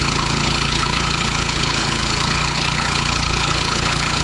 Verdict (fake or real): fake